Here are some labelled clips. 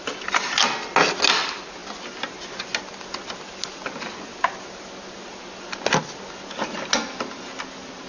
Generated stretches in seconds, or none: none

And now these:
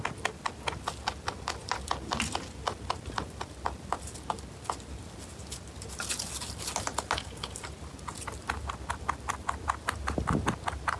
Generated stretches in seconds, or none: none

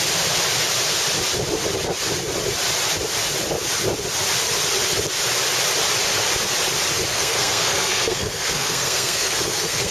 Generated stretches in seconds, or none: 7.1-9.9 (codec, SNAC)